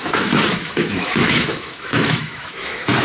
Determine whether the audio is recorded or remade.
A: remade